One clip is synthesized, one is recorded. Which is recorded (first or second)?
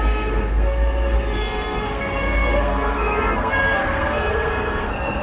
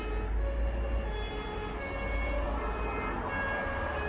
second